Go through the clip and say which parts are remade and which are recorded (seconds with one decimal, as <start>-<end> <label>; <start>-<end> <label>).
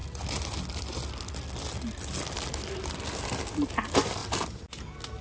0.0-5.2 recorded